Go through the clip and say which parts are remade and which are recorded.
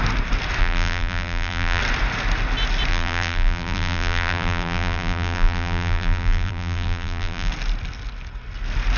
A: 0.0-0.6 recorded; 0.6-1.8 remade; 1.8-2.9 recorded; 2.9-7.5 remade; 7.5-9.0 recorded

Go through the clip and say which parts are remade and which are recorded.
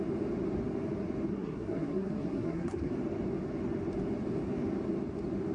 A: 0.0-1.3 recorded; 1.3-2.9 remade; 2.9-5.5 recorded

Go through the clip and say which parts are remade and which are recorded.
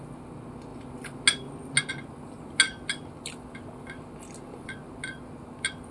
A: 0.0-5.9 recorded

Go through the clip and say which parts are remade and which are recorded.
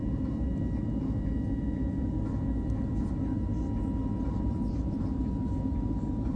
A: 0.0-0.5 remade; 0.5-3.0 recorded; 3.0-3.5 remade; 3.5-4.2 recorded; 4.2-6.4 remade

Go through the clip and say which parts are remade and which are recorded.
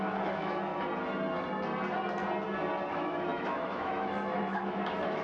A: 0.0-0.7 remade; 0.7-2.9 recorded; 2.9-5.2 remade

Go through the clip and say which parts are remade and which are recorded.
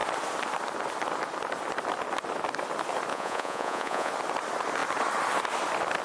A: 0.0-3.1 recorded; 3.1-4.1 remade; 4.1-6.0 recorded